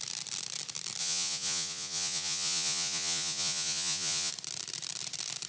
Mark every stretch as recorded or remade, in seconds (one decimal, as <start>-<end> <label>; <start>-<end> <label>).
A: 0.0-1.0 recorded; 1.0-4.3 remade; 4.3-5.5 recorded